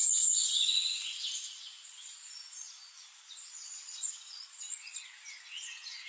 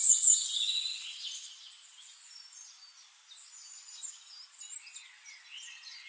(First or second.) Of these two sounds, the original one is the second